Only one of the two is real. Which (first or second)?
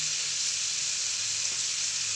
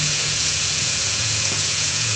first